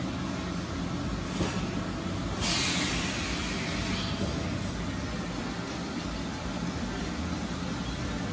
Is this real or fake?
real